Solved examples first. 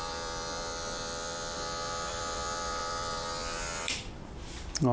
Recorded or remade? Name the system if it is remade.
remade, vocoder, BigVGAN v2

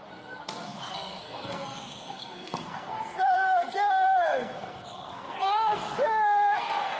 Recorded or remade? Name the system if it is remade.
remade, codec, SNAC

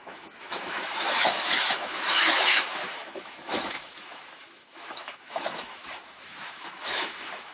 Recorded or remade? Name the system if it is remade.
remade, autoencoder, DAC-VAE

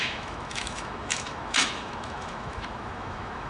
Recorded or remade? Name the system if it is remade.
remade, autoencoder, DAC-VAE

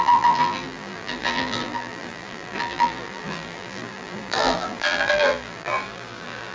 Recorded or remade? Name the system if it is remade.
remade, vocoder, BigVGAN v2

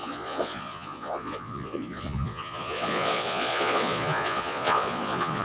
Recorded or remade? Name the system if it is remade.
remade, vocoder, Vocos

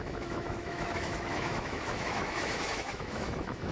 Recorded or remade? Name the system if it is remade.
remade, autoencoder, DAC-VAE